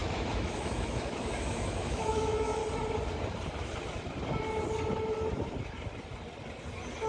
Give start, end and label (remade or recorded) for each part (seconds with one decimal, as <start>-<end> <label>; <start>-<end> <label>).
0.0-2.6 remade; 2.6-7.1 recorded